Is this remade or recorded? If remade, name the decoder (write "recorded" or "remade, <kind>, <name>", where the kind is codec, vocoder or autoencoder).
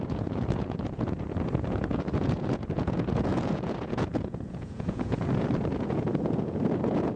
remade, vocoder, Vocos